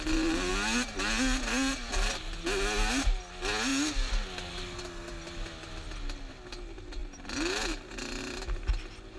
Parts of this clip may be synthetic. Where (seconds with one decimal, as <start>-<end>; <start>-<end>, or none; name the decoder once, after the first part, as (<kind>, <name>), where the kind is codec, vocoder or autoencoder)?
none